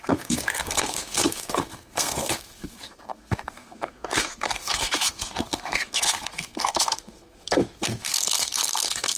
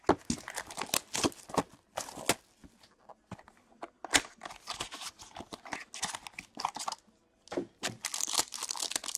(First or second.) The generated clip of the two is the first